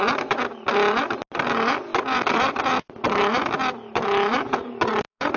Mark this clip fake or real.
real